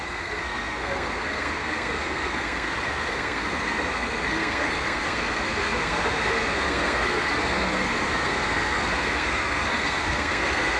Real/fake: fake